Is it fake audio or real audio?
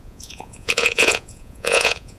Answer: fake